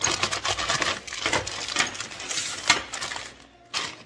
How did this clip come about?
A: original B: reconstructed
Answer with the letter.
A